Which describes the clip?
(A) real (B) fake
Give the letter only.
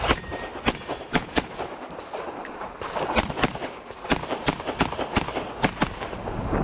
B